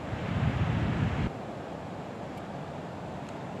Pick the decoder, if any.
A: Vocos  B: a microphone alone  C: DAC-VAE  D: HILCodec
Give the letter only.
B